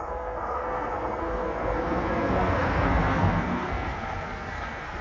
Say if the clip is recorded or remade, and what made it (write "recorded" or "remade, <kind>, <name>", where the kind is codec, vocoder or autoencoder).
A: remade, codec, SNAC